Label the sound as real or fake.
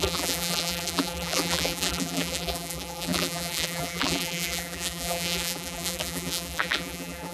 fake